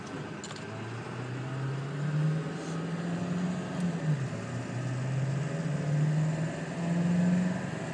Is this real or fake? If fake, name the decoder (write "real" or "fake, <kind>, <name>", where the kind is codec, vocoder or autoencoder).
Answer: real